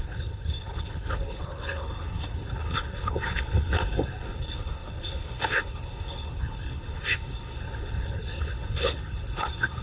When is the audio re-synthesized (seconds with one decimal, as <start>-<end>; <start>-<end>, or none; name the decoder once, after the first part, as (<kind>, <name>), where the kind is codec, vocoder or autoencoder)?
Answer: 0.0-9.8 (codec, HILCodec)